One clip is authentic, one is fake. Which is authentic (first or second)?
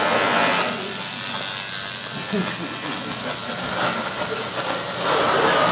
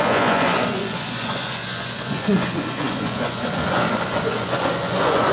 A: first